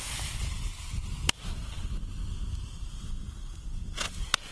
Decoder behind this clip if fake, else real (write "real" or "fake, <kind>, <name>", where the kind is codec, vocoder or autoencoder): real